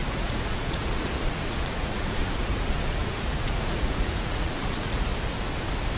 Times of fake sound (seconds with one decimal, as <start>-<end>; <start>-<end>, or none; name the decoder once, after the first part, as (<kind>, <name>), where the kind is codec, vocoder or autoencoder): 0.0-5.1 (vocoder, Vocos)